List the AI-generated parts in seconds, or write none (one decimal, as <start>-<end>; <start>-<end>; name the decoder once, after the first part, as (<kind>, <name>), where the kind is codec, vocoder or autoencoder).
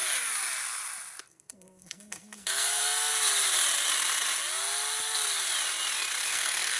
1.2-3.1 (codec, SNAC); 6.3-6.8